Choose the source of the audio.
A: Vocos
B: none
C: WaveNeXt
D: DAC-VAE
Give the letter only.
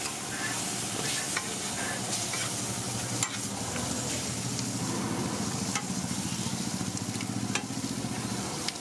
B